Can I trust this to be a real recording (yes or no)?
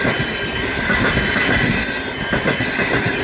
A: yes